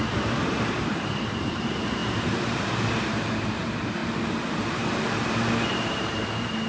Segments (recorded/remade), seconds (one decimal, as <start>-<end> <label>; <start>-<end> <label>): 0.0-4.0 remade; 4.0-4.7 recorded; 4.7-6.7 remade